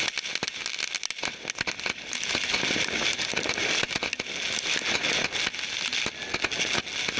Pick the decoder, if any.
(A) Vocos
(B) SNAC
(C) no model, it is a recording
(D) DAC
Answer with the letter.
C